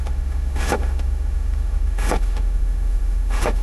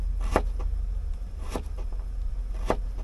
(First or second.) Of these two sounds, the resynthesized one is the first